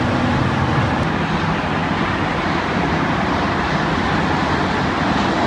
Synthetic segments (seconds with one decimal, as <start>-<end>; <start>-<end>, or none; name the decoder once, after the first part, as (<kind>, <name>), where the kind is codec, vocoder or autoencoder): 1.8-3.7 (vocoder, BigVGAN v2)